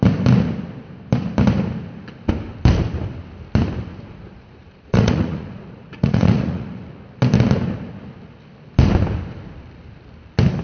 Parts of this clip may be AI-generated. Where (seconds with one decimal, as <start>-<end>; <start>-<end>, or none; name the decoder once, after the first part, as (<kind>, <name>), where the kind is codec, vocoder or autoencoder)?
3.9-6.9 (vocoder, Vocos)

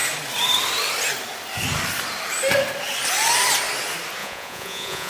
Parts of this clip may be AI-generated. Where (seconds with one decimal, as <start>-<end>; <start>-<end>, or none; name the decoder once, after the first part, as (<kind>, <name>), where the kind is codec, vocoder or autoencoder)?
4.2-5.1 (vocoder, Vocos)

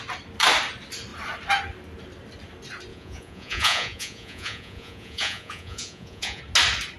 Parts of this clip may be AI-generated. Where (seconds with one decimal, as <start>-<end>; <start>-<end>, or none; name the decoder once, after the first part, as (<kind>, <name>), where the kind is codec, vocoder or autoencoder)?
2.9-6.4 (vocoder, Vocos)

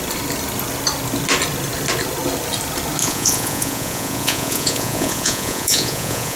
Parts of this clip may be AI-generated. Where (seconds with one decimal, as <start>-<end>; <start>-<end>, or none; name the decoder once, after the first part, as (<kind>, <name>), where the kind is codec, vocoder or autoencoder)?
3.0-6.4 (vocoder, Vocos)

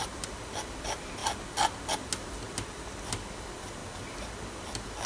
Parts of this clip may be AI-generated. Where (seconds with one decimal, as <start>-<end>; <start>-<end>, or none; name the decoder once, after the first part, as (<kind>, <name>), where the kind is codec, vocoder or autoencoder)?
none

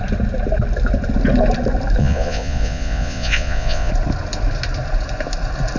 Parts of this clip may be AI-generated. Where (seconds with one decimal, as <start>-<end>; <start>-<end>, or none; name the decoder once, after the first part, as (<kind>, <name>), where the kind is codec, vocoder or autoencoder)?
2.0-3.9 (vocoder, Vocos)

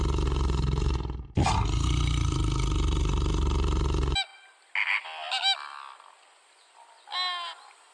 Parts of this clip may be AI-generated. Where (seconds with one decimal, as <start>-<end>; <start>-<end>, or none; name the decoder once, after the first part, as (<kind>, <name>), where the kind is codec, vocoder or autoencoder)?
none

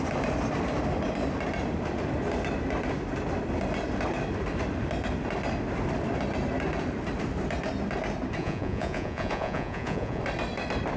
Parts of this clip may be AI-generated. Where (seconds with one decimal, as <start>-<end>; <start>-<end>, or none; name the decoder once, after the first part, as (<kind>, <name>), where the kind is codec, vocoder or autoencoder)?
8.4-10.2 (vocoder, Vocos)